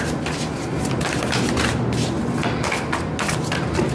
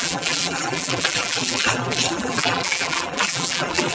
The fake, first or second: second